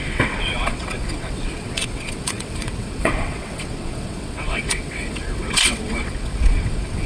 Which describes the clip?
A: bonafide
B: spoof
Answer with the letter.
B